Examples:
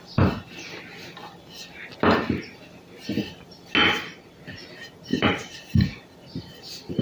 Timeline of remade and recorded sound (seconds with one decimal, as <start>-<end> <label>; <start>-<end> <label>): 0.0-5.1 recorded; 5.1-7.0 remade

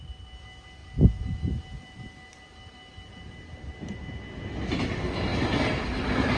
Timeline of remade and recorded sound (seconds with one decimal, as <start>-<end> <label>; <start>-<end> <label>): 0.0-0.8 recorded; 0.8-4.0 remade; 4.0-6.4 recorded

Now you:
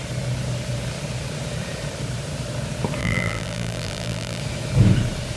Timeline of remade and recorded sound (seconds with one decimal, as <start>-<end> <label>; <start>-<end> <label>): 0.0-3.0 recorded; 3.0-4.4 remade; 4.4-5.4 recorded

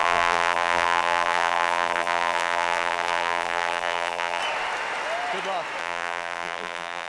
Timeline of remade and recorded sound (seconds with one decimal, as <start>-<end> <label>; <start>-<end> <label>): 0.0-4.4 remade; 4.4-5.8 recorded; 5.8-7.1 remade